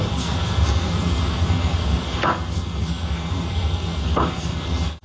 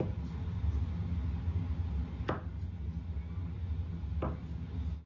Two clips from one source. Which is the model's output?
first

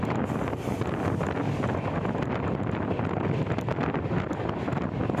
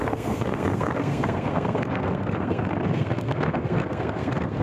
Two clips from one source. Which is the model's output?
second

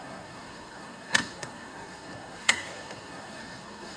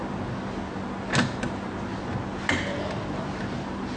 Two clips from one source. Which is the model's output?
first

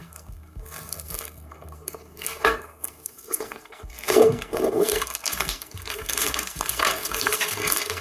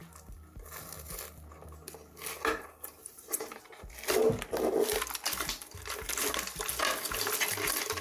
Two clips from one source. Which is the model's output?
first